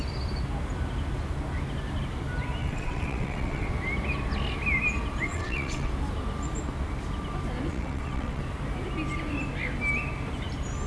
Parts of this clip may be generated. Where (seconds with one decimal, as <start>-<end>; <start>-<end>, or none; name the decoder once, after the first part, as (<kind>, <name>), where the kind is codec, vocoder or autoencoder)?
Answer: 2.6-3.7 (vocoder, WaveNeXt); 5.3-5.9; 7.7-8.4